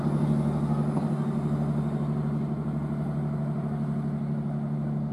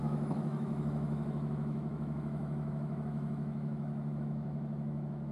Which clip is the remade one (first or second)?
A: second